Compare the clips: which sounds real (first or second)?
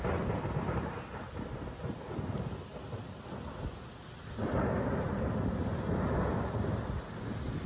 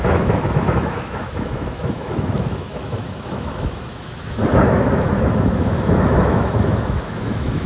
first